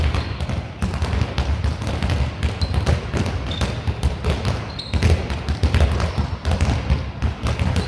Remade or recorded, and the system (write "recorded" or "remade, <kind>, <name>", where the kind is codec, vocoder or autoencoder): recorded